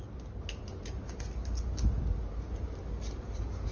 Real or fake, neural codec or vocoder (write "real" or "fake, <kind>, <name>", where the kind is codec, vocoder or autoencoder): real